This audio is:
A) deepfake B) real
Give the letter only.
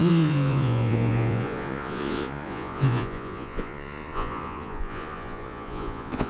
A